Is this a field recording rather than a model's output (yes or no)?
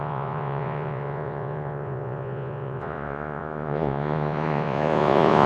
no